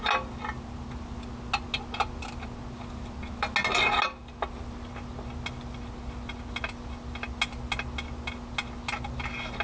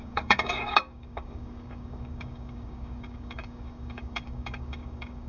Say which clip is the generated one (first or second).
second